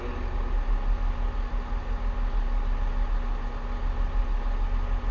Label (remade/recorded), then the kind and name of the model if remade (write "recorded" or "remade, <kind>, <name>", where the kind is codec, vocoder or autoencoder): recorded